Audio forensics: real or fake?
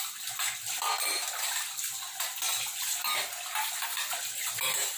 real